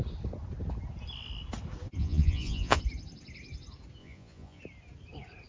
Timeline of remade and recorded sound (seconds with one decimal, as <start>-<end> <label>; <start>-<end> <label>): 0.0-2.0 recorded; 2.0-2.8 remade; 2.8-4.0 recorded; 4.0-4.6 remade; 4.6-5.5 recorded